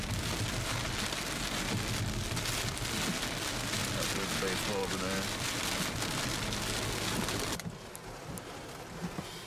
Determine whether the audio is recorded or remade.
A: recorded